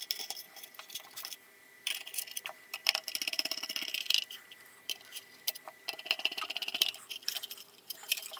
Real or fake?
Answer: fake